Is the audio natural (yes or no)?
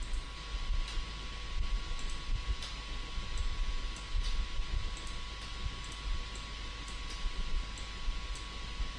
yes